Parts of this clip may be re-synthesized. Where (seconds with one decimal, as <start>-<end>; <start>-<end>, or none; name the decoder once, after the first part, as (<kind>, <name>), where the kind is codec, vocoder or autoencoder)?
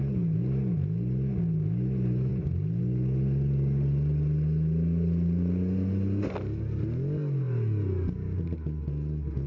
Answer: none